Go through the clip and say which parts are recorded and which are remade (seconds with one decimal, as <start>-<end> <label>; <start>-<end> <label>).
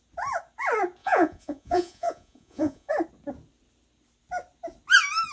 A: 0.0-1.0 recorded; 1.0-2.9 remade; 2.9-5.3 recorded